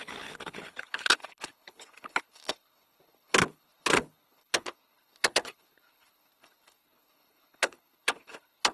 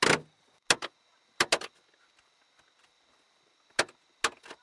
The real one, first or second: second